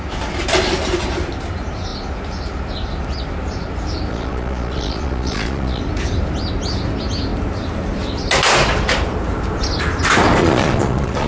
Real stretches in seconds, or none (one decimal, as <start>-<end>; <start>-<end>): 0.0-4.1; 5.8-10.4